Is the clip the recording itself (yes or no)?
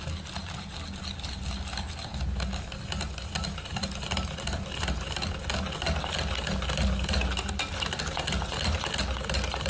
yes